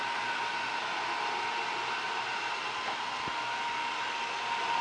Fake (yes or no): no